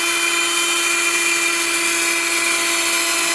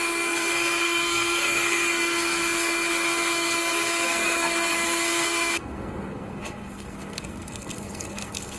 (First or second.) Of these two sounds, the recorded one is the first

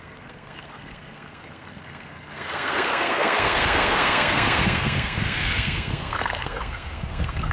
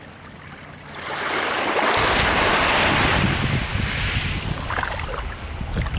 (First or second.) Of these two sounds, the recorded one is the second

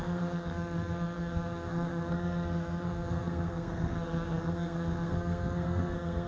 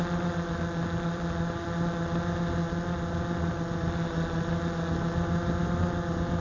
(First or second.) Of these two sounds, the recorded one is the second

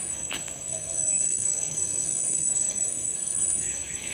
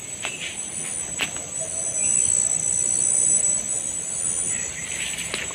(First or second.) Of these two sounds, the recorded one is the second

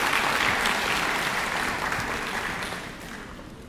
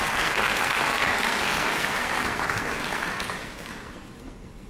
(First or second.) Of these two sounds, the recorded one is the first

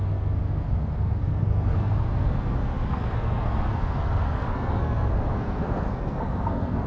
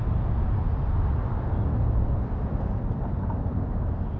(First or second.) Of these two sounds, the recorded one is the second